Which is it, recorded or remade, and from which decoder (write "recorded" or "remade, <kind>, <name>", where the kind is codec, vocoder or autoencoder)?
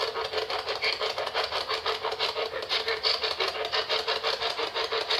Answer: recorded